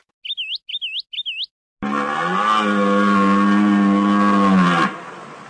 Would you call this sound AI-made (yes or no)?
no